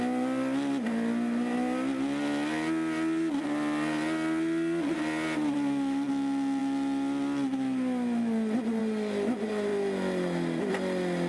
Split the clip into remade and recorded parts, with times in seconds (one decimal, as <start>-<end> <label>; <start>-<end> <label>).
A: 0.0-11.3 recorded